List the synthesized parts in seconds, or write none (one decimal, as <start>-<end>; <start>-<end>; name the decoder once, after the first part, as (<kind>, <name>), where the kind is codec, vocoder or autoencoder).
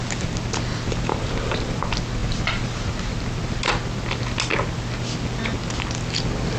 1.1-1.8 (vocoder, BigVGAN v2); 2.2-3.1